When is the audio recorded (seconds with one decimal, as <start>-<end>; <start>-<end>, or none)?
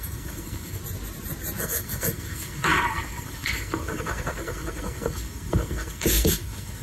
0.8-1.6